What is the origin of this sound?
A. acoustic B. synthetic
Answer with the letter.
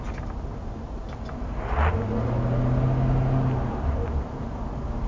A